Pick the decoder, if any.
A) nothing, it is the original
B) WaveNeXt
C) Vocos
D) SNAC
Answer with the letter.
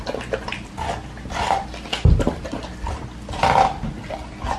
A